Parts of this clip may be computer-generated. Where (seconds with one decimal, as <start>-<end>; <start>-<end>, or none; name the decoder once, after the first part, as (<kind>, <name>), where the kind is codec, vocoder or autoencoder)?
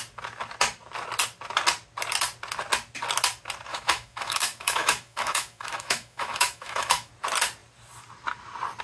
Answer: 3.7-7.1 (autoencoder, DAC-VAE)